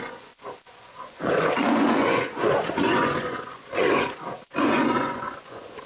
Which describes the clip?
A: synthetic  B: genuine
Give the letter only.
A